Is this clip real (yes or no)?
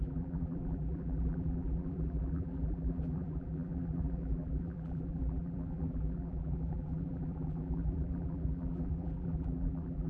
no